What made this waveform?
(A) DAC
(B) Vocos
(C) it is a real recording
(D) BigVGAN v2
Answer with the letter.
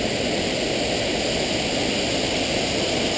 C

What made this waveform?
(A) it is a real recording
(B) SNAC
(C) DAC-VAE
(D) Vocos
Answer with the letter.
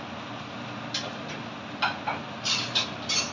A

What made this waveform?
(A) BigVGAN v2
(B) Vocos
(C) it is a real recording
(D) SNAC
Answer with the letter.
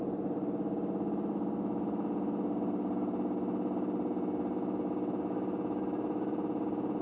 C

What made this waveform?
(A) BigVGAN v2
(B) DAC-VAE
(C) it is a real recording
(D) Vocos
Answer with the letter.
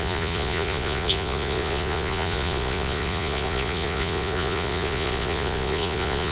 D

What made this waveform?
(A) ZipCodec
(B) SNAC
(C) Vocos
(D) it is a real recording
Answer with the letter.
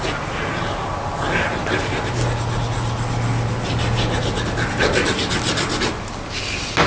D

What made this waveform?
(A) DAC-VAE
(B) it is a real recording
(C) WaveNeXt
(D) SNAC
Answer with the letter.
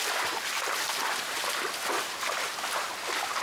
B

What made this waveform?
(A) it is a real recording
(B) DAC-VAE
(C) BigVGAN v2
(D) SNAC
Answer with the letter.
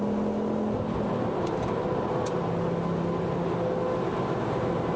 A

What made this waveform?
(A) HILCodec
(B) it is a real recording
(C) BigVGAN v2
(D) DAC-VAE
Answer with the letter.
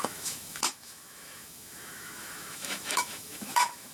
D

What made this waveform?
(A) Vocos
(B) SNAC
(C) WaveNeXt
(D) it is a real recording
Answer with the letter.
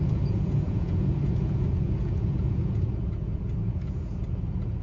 A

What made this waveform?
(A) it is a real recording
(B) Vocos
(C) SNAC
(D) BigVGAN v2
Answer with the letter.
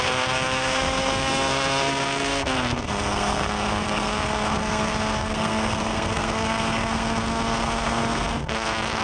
C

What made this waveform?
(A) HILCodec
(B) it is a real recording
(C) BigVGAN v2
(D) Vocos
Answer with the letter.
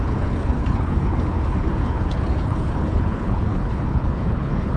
A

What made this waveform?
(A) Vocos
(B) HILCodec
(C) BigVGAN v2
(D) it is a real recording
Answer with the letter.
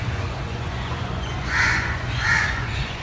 A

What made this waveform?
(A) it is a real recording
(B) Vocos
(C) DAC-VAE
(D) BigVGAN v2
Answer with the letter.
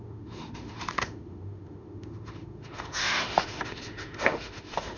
C